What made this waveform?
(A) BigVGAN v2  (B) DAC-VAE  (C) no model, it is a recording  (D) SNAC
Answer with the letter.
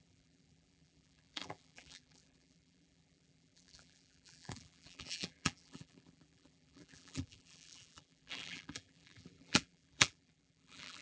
A